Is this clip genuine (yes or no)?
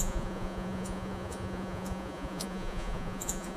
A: no